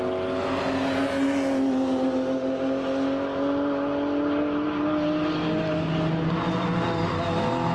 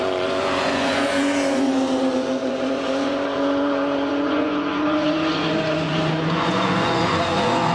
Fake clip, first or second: second